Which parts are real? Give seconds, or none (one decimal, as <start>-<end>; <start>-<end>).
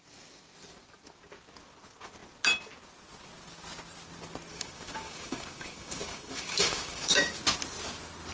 0.0-4.5; 7.4-8.3